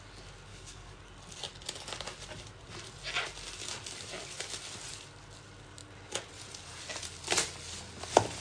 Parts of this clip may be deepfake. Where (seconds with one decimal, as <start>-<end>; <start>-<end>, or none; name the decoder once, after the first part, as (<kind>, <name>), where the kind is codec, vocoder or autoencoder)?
0.5-1.0 (codec, DAC)